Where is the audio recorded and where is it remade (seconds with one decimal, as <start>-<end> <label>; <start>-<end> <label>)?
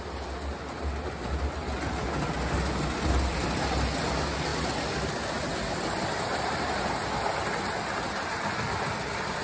0.0-9.4 recorded